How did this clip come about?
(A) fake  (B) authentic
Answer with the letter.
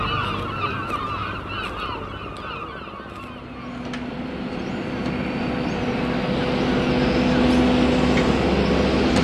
B